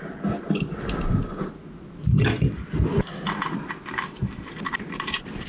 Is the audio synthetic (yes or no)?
no